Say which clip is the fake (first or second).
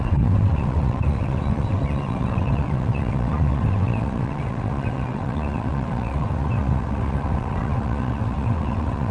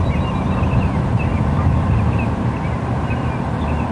first